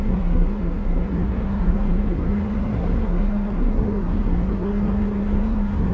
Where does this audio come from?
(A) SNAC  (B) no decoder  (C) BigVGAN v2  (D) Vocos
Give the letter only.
A